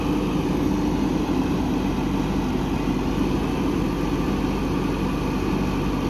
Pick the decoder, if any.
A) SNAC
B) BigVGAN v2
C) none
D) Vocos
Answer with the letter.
C